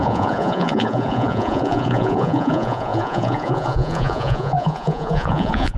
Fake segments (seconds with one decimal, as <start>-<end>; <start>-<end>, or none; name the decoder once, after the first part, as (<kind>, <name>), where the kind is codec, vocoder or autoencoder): 0.0-5.8 (vocoder, Vocos)